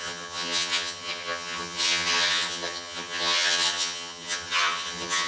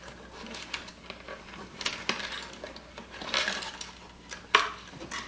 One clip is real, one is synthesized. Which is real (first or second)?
second